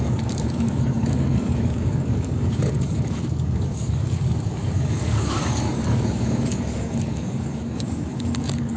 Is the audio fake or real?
fake